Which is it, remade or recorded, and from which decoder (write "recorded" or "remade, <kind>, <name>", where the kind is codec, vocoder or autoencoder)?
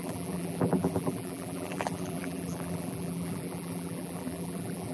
remade, vocoder, BigVGAN v2